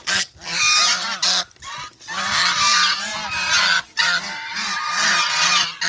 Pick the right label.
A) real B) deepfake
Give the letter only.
A